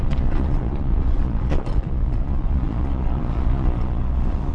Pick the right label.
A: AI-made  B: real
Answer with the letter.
A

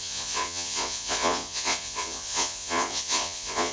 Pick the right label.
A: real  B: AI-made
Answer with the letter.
B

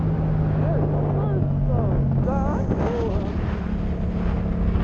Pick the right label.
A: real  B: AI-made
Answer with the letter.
A